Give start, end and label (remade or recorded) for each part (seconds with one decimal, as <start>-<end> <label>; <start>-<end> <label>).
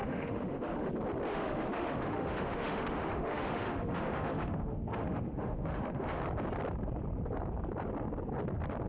0.0-0.9 remade; 0.9-1.3 recorded; 1.3-6.2 remade; 6.2-8.9 recorded